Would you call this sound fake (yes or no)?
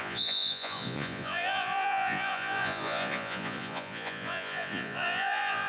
yes